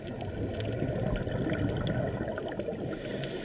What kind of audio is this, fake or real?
real